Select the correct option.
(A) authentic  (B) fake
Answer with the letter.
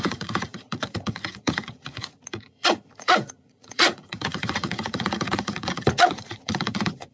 B